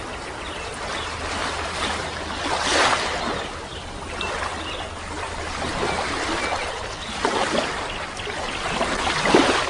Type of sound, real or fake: real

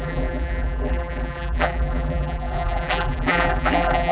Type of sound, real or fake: fake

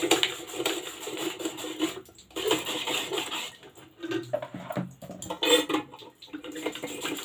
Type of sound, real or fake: real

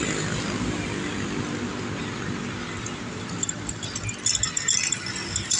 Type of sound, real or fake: real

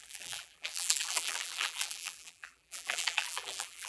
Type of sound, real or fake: fake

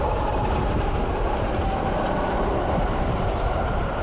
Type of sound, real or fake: fake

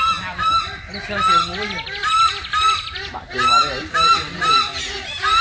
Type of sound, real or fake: real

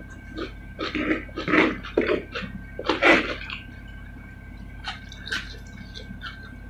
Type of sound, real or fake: real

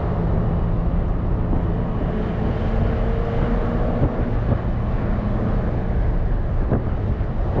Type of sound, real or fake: real